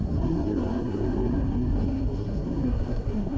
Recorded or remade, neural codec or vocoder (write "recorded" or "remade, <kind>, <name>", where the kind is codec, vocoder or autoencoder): remade, codec, SNAC